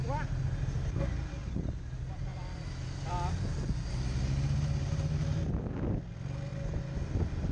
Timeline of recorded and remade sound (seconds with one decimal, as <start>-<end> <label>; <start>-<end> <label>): 0.0-7.5 recorded